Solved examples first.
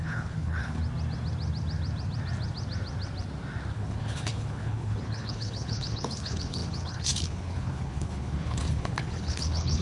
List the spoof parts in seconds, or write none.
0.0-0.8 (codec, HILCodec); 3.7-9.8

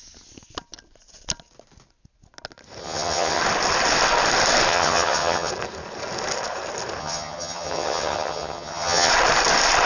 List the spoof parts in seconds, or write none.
2.8-3.4 (vocoder, HiFi-GAN); 4.7-5.5; 7.0-9.1

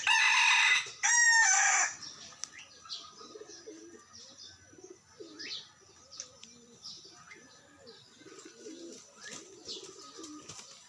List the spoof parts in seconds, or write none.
1.4-2.0 (vocoder, BigVGAN v2)